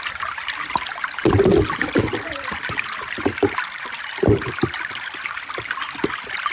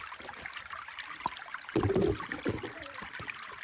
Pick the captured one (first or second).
first